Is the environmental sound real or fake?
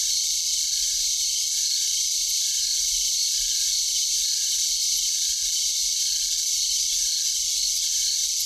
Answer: real